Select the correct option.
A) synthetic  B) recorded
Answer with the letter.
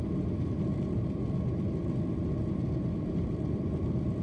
B